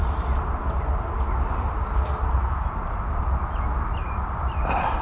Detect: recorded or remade recorded